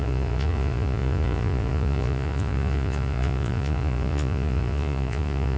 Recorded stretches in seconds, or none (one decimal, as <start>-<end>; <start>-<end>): none